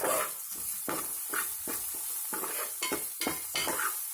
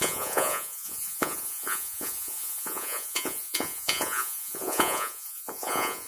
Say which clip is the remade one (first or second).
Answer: second